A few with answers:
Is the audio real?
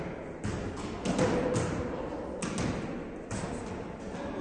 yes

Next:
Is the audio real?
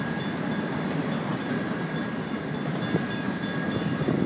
yes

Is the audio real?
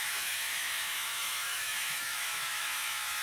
no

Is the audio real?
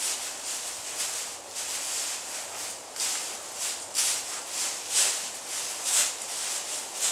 yes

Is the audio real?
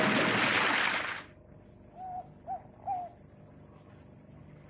yes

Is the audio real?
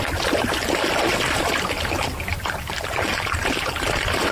yes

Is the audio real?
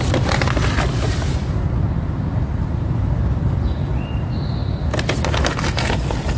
yes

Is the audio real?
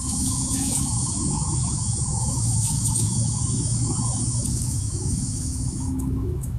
no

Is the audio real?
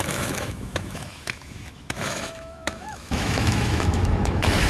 no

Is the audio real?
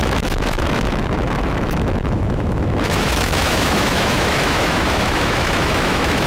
no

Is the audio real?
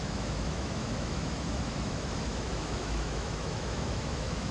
no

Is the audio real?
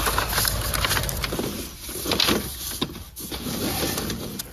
yes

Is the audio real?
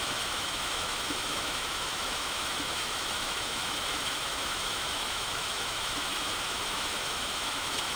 no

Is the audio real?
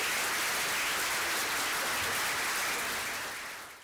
yes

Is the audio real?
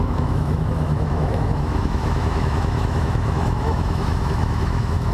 no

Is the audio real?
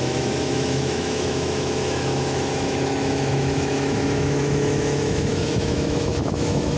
no